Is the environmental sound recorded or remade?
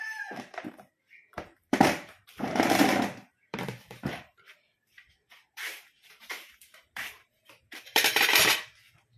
remade